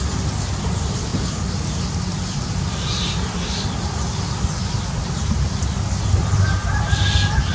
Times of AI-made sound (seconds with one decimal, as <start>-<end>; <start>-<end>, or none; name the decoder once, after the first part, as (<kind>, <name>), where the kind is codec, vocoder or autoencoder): none